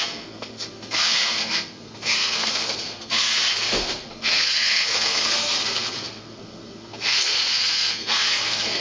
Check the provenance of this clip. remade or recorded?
remade